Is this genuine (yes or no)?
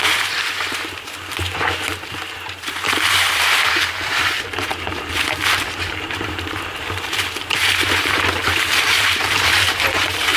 no